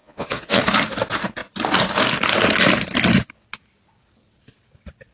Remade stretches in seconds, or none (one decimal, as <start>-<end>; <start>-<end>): 0.0-0.6